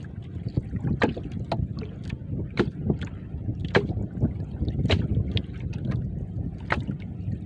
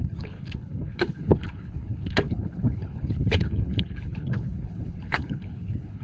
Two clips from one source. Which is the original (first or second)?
first